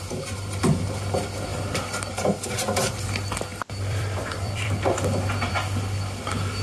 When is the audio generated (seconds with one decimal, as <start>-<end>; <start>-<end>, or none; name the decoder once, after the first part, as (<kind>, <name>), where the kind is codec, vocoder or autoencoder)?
1.5-2.9 (vocoder, BigVGAN v2); 3.5-4.7